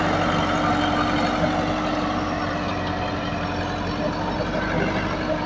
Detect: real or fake real